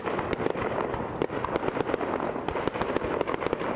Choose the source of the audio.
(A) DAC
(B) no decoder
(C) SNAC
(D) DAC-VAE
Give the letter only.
B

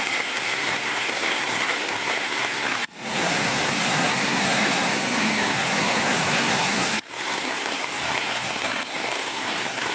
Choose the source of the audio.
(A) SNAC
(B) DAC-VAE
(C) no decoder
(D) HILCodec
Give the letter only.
A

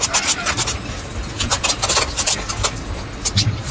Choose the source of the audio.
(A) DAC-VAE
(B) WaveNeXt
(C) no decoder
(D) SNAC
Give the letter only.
C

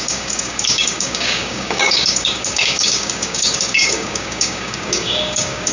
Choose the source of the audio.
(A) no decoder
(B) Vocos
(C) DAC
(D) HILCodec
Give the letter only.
C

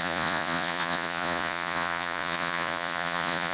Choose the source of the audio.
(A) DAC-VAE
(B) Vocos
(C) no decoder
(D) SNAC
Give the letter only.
B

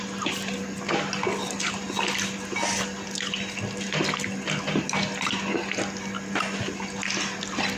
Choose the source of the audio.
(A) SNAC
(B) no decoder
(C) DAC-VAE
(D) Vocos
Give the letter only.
B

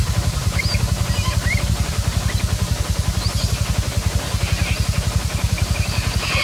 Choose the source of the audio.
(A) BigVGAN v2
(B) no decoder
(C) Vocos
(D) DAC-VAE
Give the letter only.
B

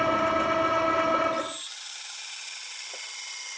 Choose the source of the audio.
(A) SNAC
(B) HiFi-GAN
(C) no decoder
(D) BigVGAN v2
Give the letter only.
C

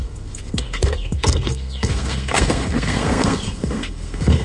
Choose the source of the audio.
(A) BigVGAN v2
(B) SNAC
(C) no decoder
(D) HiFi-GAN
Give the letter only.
B